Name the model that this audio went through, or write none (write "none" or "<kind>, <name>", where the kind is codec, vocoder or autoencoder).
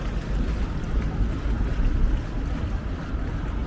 none